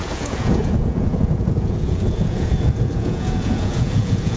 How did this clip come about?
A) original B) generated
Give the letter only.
B